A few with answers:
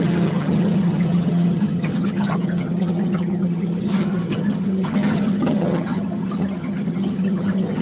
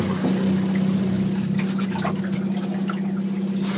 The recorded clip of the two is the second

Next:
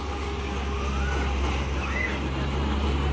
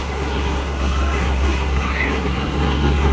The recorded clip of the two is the first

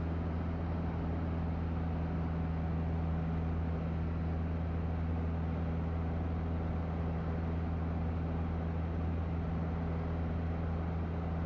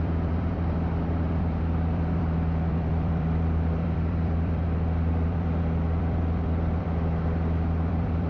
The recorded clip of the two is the first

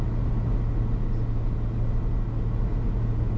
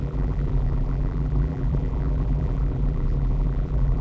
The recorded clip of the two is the first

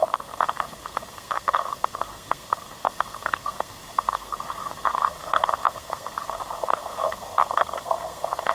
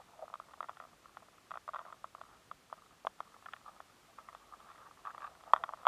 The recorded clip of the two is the second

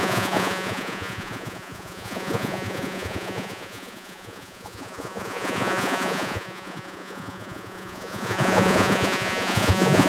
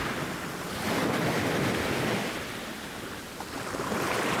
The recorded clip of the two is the second